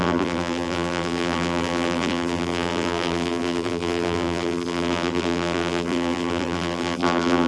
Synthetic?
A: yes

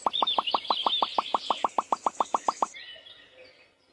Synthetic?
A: no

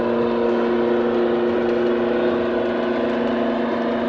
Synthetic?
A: no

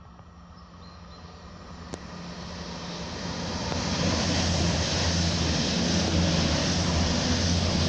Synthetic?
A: no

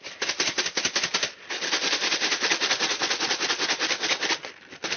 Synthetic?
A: no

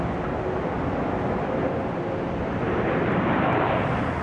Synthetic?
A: no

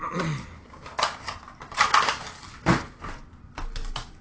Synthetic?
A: no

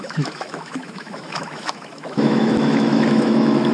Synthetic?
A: yes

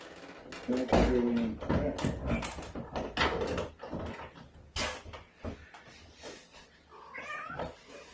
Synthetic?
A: no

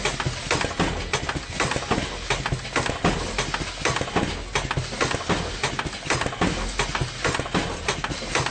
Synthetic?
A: no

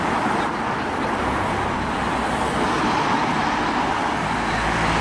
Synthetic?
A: no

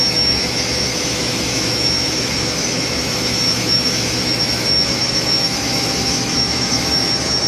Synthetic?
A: yes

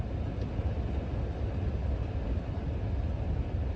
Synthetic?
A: no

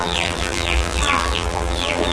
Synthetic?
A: yes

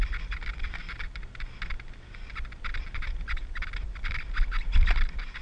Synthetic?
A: no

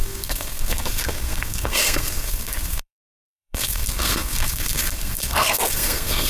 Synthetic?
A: yes